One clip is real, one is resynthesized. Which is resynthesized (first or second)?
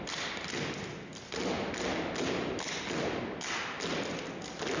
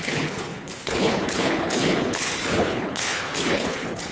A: second